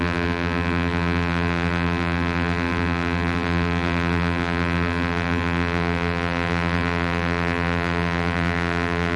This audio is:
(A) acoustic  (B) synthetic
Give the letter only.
B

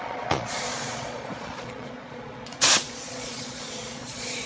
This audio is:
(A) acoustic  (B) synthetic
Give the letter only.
B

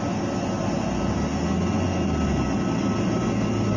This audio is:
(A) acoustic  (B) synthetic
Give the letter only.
A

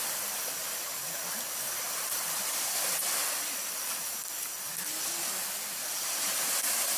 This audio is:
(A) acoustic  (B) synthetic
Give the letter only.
A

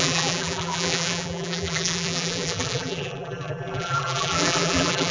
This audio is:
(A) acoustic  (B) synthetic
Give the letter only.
B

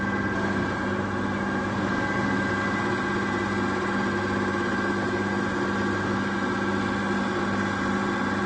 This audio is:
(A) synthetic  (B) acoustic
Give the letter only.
B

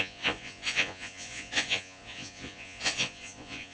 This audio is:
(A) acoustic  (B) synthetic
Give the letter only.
B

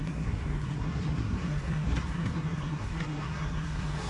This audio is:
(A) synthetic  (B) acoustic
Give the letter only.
A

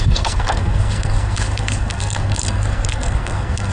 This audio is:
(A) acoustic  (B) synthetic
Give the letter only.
B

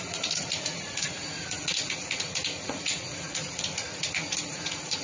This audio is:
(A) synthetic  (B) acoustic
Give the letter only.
A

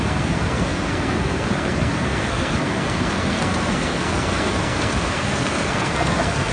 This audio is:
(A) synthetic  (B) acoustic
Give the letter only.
A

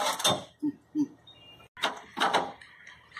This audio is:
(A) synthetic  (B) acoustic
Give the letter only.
B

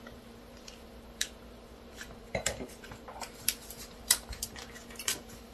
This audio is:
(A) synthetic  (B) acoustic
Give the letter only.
A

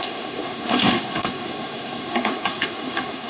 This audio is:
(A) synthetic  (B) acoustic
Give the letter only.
A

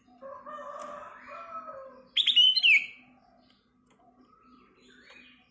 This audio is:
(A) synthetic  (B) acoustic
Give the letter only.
B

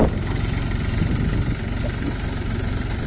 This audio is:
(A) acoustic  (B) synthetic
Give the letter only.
A